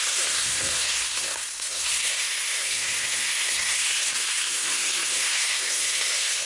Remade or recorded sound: remade